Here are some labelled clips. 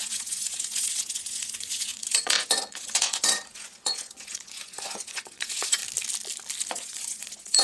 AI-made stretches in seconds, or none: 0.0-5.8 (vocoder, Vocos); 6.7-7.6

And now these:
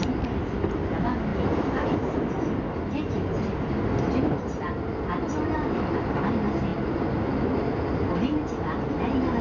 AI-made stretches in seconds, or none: none

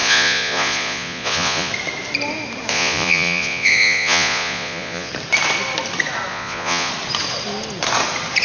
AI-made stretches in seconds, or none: 0.0-1.7 (vocoder, Vocos); 2.7-5.1; 6.3-6.9

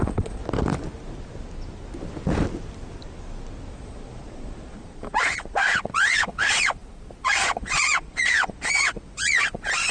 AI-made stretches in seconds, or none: 0.0-0.4 (vocoder, Vocos); 3.7-9.9

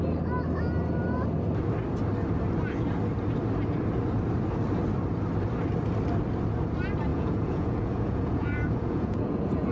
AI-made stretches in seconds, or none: 7.1-9.7 (vocoder, Vocos)

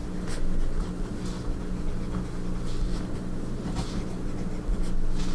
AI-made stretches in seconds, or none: none

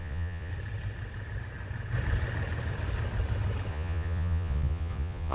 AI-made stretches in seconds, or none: 0.0-0.5 (vocoder, Vocos); 3.7-5.3

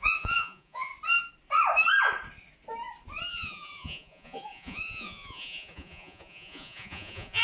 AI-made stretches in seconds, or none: 0.0-0.9 (vocoder, Vocos); 3.3-7.4